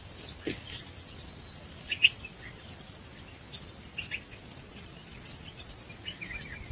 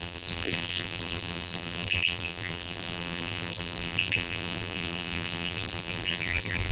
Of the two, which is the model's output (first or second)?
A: second